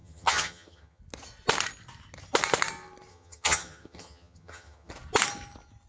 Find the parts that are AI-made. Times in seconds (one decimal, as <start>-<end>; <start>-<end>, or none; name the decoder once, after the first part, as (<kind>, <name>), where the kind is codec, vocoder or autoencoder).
0.0-1.0 (vocoder, HiFi-GAN); 3.1-4.9